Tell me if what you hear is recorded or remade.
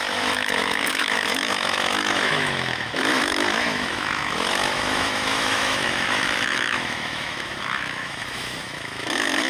remade